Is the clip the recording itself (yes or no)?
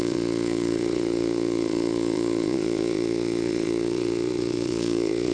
no